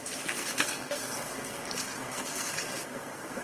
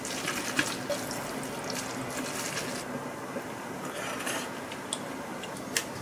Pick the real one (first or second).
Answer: second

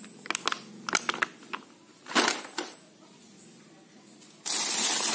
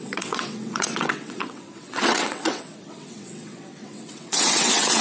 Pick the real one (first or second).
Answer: first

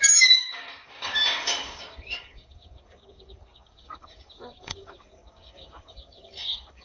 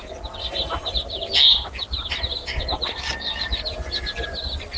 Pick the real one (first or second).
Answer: second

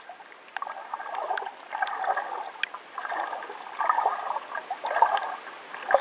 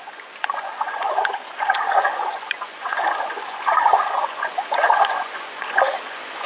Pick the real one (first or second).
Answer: first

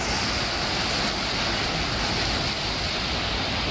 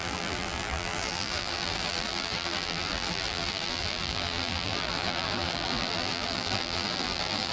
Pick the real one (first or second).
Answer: first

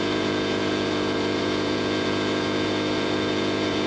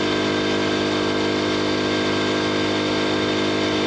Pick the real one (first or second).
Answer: second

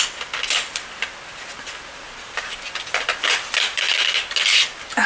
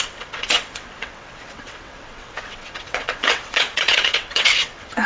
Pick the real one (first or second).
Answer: first